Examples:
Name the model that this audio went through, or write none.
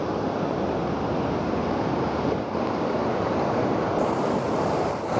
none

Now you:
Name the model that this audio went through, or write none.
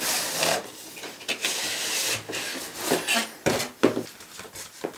none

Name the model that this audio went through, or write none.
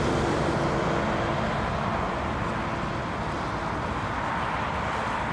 none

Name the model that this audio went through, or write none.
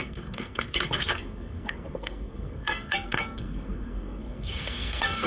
codec, SNAC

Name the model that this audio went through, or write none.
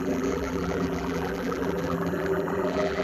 vocoder, BigVGAN v2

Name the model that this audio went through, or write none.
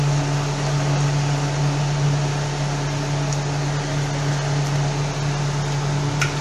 none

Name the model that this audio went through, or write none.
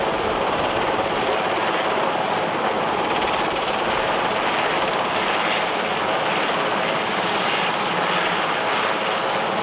vocoder, BigVGAN v2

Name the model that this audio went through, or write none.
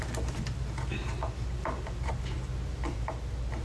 none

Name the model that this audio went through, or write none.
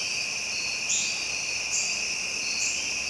none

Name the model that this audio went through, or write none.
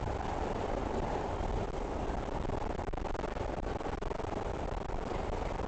vocoder, BigVGAN v2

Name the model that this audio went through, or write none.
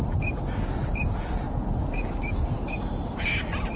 none